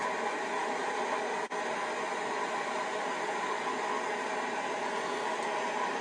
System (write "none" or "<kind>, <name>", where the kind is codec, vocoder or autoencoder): none